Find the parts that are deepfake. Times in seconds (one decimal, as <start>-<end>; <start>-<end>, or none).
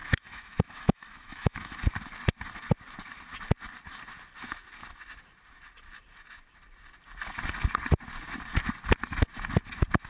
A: 0.0-1.8